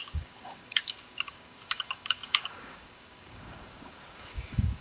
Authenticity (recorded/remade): remade